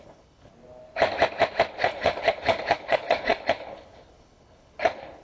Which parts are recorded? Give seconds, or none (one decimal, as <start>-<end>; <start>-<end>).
0.5-1.7